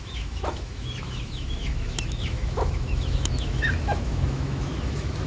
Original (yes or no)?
no